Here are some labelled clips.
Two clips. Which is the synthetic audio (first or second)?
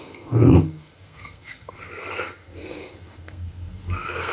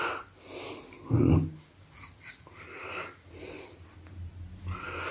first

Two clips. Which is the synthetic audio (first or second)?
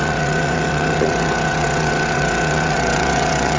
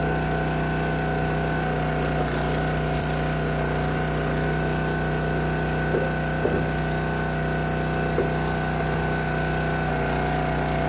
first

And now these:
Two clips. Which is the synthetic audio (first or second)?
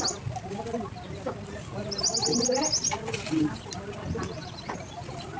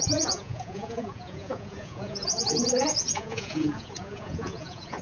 second